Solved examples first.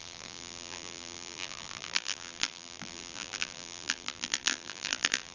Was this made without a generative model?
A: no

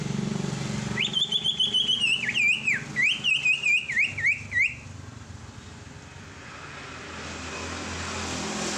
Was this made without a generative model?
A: yes